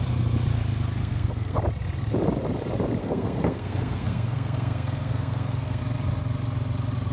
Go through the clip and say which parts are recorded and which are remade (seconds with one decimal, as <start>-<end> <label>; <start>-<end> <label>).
0.0-1.0 recorded; 1.0-1.6 remade; 1.6-3.0 recorded; 3.0-5.8 remade; 5.8-7.1 recorded